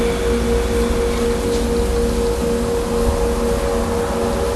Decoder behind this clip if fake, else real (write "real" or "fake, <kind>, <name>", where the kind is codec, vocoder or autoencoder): real